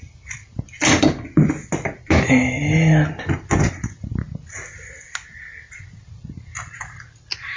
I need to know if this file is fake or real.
real